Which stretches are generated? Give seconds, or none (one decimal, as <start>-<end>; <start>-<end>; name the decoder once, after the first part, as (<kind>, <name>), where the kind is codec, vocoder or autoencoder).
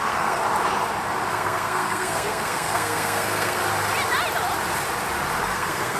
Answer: 0.0-0.4 (codec, SNAC); 1.3-3.6; 5.4-6.0